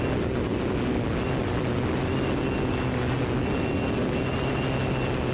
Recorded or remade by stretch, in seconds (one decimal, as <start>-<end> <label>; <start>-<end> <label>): 0.0-5.3 recorded